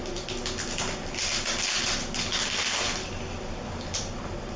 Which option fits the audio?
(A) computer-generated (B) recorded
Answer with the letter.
B